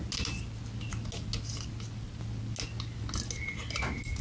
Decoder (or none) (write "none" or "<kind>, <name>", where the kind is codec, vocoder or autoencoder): none